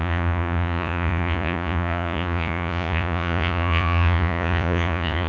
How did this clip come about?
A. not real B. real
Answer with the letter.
A